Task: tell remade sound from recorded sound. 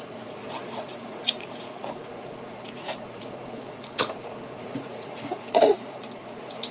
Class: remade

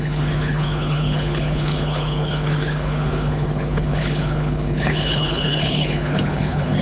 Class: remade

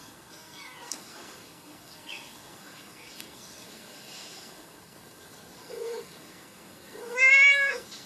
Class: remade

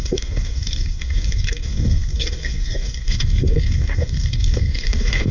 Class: remade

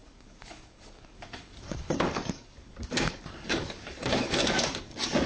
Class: remade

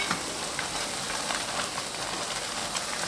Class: recorded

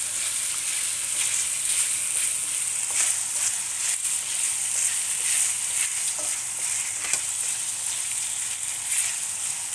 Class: recorded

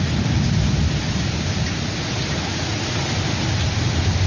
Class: recorded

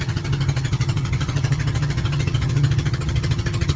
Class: remade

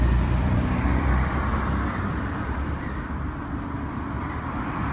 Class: remade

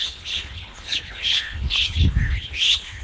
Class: remade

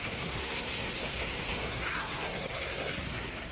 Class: remade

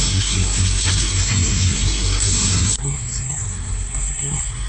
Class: remade